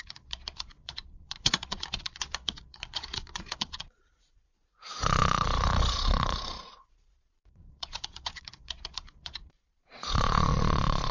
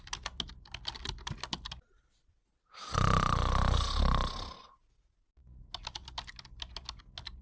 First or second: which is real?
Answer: second